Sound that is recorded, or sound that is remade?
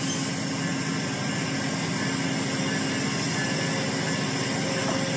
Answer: recorded